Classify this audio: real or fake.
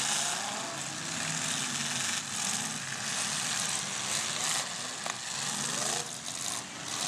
real